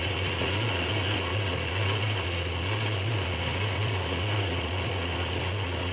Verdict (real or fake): fake